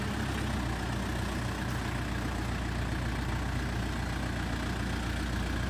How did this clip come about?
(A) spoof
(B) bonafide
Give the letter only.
B